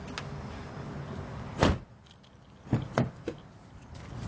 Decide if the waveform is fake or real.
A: real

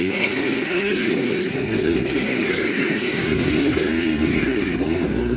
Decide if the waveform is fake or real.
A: fake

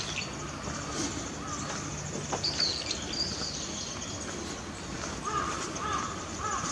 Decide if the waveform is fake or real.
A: real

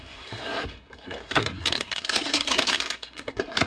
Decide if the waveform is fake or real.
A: fake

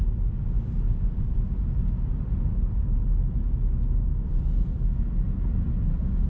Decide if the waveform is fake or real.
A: real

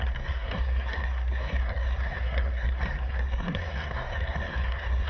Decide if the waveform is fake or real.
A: fake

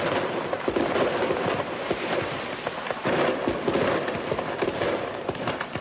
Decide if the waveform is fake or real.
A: real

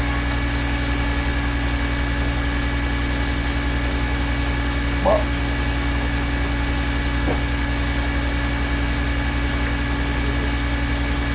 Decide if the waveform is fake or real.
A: real